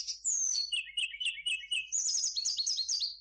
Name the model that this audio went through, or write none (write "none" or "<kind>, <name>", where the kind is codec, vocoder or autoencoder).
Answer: vocoder, BigVGAN v2